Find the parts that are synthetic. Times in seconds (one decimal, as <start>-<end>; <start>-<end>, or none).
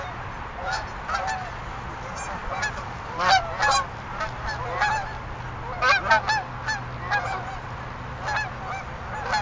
2.4-4.6